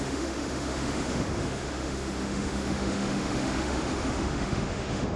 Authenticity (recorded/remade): remade